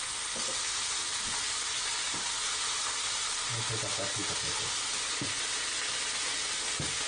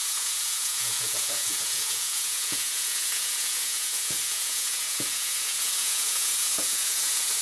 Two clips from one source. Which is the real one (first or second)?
first